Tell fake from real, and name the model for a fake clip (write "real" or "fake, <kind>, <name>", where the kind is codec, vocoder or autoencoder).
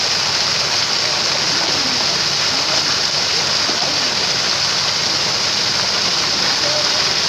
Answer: real